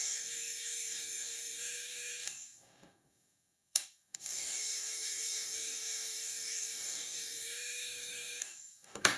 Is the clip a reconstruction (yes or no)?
yes